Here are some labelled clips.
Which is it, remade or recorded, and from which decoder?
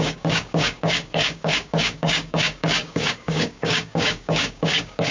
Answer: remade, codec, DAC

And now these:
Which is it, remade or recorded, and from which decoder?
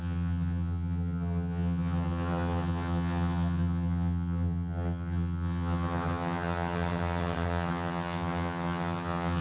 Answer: remade, vocoder, HiFi-GAN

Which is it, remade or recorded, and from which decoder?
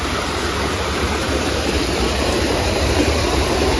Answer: remade, vocoder, BigVGAN v2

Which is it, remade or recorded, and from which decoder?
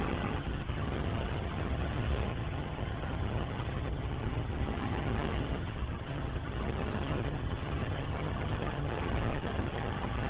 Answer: remade, vocoder, HiFi-GAN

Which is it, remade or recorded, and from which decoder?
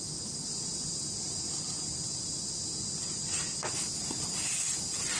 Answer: recorded